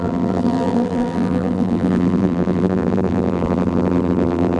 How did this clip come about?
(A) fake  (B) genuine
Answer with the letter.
A